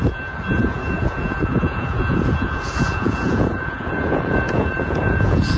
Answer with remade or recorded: remade